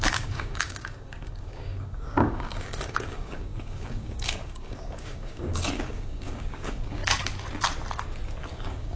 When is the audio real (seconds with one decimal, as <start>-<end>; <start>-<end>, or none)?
7.0-8.5